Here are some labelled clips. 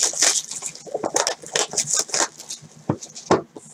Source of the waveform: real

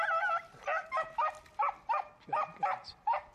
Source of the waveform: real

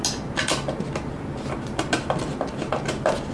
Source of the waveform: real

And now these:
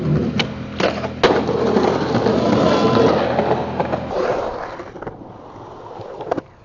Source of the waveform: real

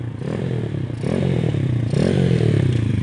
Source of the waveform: real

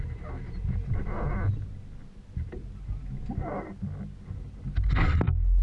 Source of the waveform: real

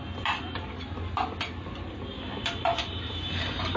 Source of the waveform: real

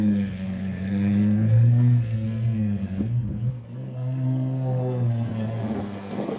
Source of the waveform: fake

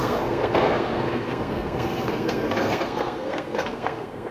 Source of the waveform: fake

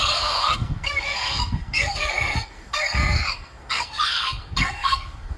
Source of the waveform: fake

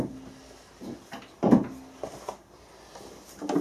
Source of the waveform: real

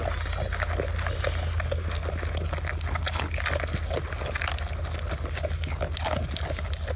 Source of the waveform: real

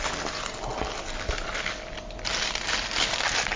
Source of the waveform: real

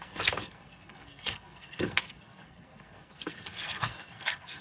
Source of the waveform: fake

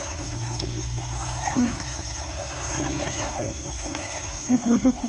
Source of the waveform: fake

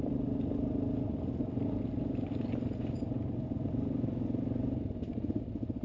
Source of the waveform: real